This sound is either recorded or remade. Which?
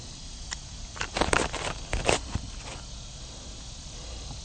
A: recorded